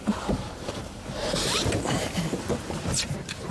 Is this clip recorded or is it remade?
remade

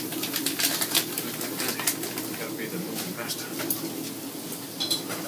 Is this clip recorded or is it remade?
recorded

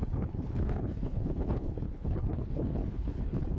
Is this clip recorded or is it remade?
remade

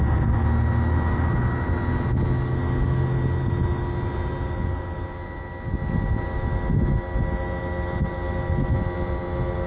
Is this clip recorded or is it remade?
recorded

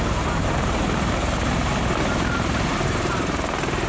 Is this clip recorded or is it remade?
remade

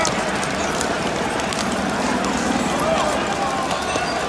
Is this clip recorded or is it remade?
recorded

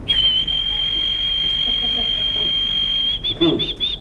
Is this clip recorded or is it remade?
recorded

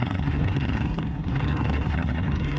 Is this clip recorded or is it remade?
remade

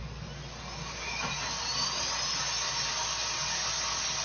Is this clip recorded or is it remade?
recorded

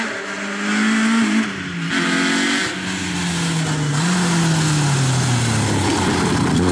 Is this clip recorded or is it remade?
recorded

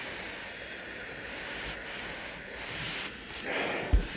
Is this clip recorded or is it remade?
recorded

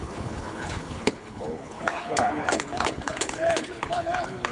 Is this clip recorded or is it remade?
remade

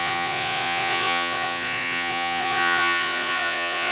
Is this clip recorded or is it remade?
remade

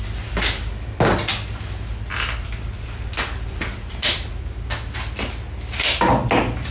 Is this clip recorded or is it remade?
recorded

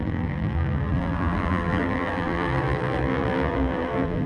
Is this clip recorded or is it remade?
remade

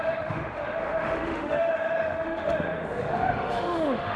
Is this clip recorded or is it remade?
remade